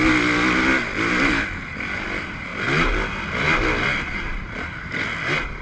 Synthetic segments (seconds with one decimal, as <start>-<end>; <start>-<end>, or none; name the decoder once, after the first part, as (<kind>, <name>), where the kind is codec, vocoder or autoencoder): none